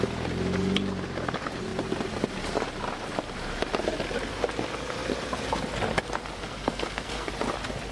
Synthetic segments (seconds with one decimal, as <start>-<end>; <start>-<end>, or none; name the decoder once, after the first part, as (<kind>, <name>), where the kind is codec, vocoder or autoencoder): 6.4-7.3 (codec, SNAC)